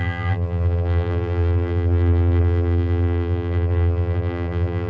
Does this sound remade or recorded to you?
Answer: remade